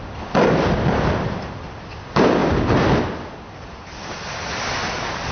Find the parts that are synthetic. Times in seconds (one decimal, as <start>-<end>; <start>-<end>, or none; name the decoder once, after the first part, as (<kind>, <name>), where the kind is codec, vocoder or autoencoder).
none